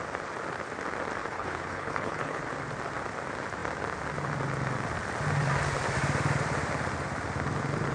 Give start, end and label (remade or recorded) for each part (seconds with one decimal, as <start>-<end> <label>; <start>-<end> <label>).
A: 0.0-1.2 recorded; 1.2-2.4 remade; 2.4-7.9 recorded